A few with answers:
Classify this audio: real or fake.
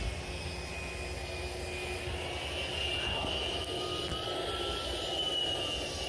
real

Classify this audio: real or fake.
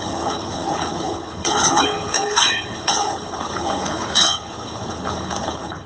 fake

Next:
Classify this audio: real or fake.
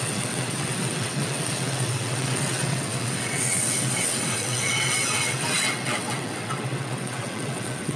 fake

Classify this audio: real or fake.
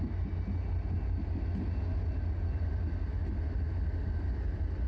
real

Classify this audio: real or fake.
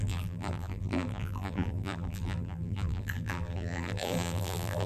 fake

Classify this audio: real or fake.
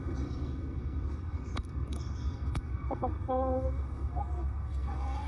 fake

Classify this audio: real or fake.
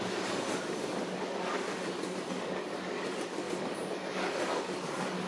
fake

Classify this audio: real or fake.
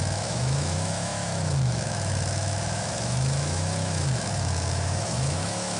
fake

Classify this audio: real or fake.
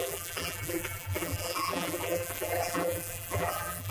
fake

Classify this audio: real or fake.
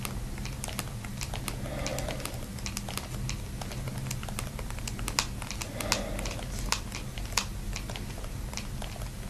real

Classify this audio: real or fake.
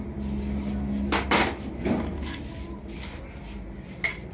real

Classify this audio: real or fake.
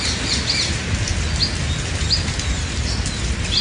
real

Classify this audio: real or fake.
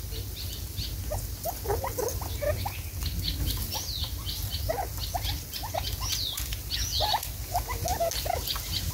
real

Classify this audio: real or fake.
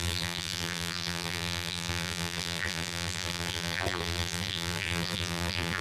fake